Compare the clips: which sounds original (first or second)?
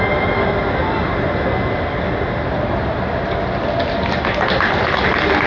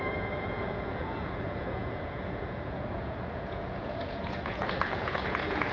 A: first